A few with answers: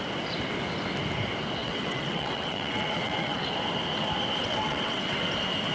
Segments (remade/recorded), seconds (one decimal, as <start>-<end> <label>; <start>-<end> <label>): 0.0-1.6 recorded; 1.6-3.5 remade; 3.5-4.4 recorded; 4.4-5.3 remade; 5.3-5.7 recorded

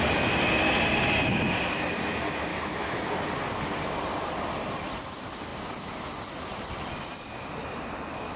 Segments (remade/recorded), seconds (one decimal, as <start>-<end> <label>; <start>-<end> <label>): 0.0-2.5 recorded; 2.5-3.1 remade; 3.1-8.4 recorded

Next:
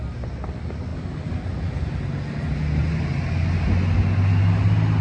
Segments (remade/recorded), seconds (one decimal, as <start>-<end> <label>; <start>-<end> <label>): 0.0-5.0 recorded

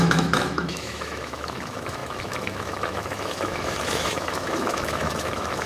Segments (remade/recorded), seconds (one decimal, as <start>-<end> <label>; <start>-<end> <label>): 0.0-5.7 remade